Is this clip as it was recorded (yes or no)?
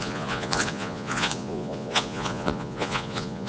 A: no